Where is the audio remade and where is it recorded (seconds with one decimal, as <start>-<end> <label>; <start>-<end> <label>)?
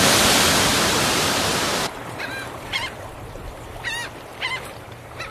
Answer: 0.0-0.7 recorded; 0.7-3.9 remade; 3.9-4.3 recorded; 4.3-5.3 remade